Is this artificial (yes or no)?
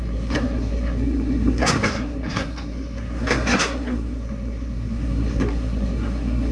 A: yes